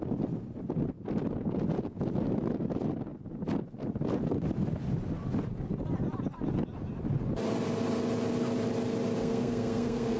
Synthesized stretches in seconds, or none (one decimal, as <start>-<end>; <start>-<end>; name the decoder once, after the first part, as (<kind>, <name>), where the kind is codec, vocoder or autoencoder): 9.2-10.2 (codec, SNAC)